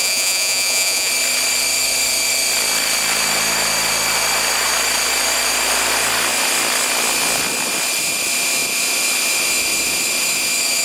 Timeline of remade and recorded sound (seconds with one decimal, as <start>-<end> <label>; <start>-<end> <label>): 0.0-1.1 remade; 1.1-10.8 recorded